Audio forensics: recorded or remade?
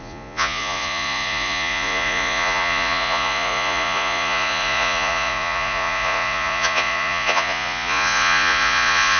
remade